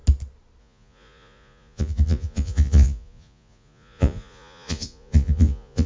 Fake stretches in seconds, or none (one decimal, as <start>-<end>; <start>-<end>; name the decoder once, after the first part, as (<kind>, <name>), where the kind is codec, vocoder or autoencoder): 0.6-5.9 (vocoder, Vocos)